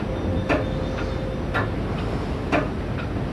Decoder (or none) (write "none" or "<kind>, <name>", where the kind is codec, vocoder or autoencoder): vocoder, BigVGAN v2